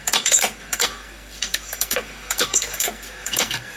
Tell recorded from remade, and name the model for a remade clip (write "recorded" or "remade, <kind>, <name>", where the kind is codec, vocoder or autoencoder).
remade, codec, SNAC